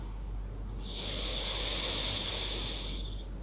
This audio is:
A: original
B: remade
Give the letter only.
A